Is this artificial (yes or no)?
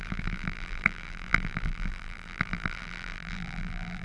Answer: yes